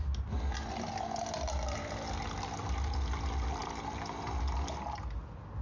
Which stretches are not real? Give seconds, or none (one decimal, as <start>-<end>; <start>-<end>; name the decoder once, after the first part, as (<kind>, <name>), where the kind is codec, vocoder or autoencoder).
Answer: none